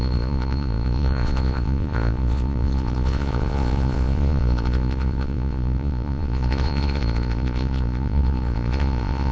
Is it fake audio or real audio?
fake